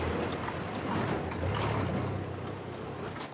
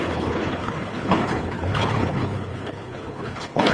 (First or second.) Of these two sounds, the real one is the first